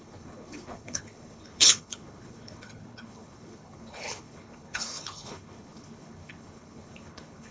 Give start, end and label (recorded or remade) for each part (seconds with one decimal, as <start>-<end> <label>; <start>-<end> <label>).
0.0-7.5 remade

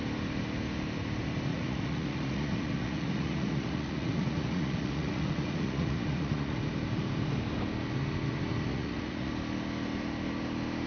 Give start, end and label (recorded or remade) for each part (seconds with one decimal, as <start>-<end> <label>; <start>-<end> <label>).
0.0-1.5 recorded; 1.5-6.6 remade; 6.6-8.7 recorded; 8.7-9.3 remade; 9.3-10.9 recorded

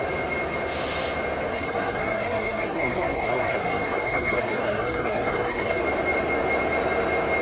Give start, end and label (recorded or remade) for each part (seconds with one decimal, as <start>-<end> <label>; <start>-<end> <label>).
0.0-1.5 recorded; 1.5-5.8 remade; 5.8-7.4 recorded

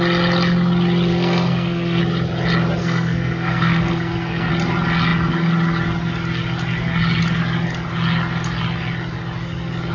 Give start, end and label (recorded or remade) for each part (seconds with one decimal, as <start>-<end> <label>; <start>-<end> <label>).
0.0-1.1 recorded; 1.1-2.0 remade; 2.0-2.8 recorded; 2.8-4.5 remade; 4.5-9.9 recorded